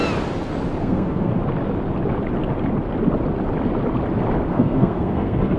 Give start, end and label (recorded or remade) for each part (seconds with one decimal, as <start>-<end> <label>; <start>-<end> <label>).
0.0-0.8 recorded; 0.8-1.3 remade; 1.3-4.5 recorded; 4.5-5.6 remade